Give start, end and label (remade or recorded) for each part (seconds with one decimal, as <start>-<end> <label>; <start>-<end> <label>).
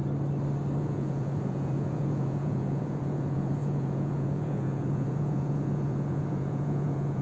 0.0-0.8 recorded; 0.8-7.2 remade